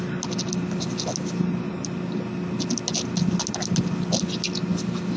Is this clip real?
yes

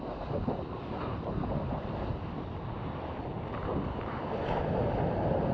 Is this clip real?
yes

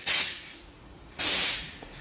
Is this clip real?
no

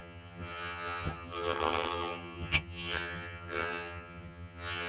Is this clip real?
no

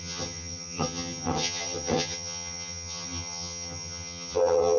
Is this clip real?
no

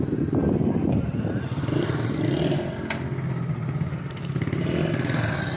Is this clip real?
yes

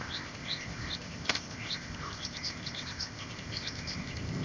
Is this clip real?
no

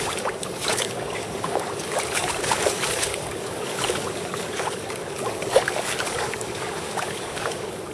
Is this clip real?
no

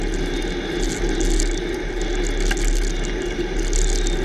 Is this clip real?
yes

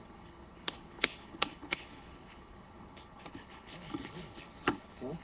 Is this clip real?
no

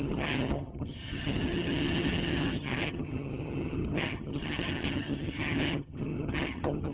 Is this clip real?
no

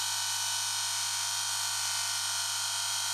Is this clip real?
yes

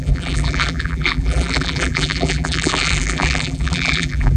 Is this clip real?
no